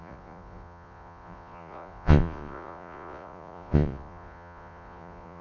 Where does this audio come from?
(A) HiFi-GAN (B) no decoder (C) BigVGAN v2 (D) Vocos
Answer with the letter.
D